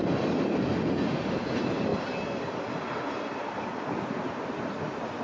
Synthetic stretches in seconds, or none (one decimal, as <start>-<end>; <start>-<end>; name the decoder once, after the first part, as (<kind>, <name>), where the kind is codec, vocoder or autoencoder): none